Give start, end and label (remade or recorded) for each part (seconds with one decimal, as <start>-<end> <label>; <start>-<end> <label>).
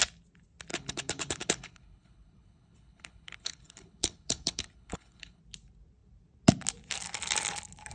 0.0-0.7 recorded; 0.7-5.4 remade; 5.4-7.9 recorded